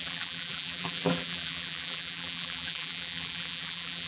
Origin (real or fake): fake